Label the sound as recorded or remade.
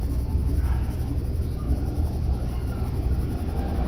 recorded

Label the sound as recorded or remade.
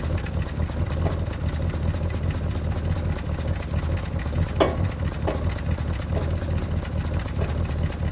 recorded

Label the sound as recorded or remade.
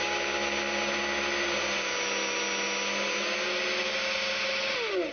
recorded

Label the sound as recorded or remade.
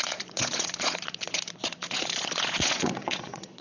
remade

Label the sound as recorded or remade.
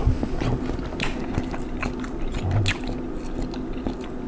recorded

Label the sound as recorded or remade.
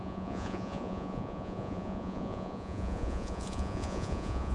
remade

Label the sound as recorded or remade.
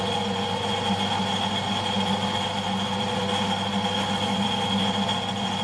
recorded